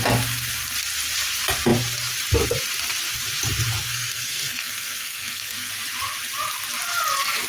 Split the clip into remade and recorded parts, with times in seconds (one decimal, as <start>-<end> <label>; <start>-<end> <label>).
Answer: 0.0-3.8 recorded; 3.8-5.7 remade; 5.7-7.5 recorded